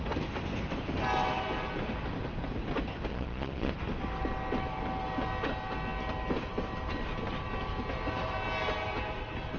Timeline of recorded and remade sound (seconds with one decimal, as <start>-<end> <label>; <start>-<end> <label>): 0.0-3.1 recorded; 3.1-3.7 remade; 3.7-9.6 recorded